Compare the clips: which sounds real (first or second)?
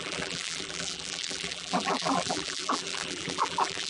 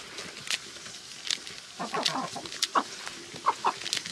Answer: second